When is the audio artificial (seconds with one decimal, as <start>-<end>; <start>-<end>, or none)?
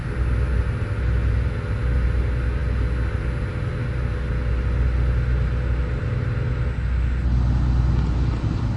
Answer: none